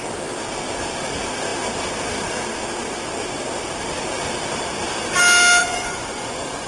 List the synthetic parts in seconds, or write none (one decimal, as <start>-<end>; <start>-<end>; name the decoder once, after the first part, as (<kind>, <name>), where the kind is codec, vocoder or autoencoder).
5.6-6.7 (vocoder, Vocos)